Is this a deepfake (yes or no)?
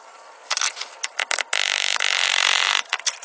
no